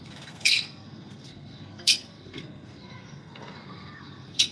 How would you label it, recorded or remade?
remade